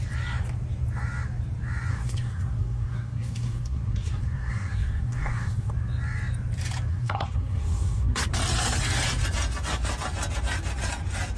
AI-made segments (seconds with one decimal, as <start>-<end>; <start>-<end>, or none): 1.9-5.7; 6.9-8.3